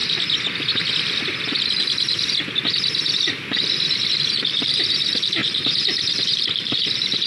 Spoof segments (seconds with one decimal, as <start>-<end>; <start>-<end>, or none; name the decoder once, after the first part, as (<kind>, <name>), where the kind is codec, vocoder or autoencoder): 4.2-7.3 (vocoder, BigVGAN v2)